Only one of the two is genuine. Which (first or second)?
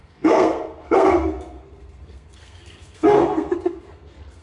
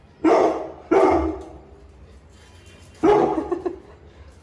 second